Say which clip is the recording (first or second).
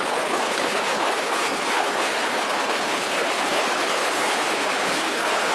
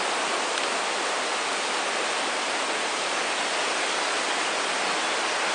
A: second